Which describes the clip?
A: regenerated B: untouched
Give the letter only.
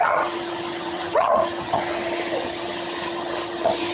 A